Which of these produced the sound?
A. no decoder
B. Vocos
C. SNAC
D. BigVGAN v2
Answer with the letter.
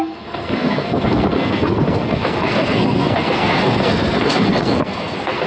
C